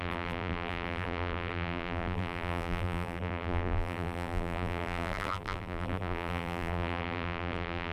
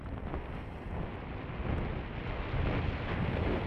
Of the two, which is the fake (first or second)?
first